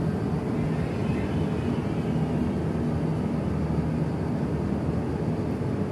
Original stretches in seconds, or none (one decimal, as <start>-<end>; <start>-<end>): 0.0-5.9